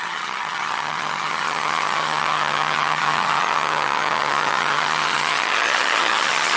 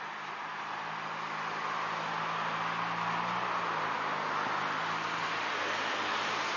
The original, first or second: second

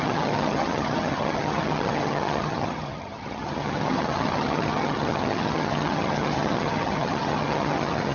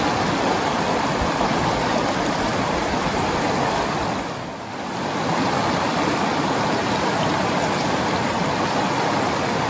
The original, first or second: second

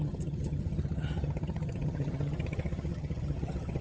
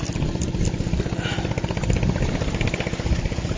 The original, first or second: second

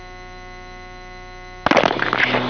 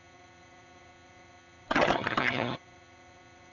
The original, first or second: first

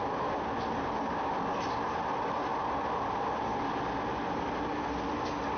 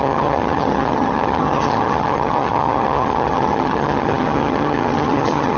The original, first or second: first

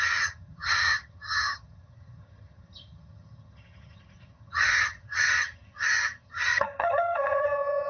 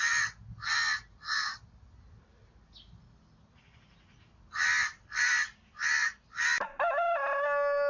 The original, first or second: second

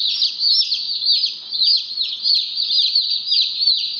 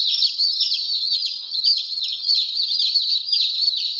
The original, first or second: first